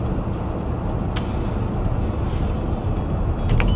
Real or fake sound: real